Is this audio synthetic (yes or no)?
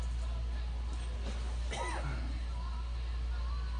no